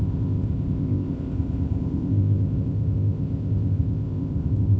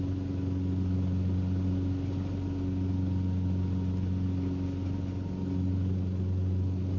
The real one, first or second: second